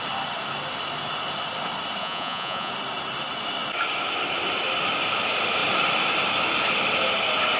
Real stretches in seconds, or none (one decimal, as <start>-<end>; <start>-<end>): 0.0-2.0; 2.7-7.6